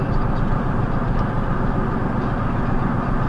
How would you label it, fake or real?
real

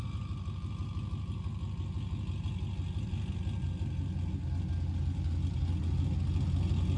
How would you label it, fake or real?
real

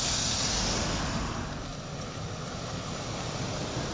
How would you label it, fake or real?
real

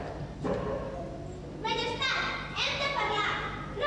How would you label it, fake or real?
real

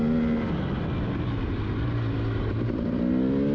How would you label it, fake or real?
real